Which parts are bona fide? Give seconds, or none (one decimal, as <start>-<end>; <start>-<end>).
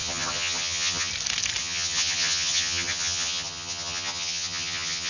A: 1.1-1.6